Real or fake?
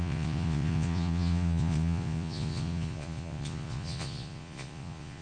fake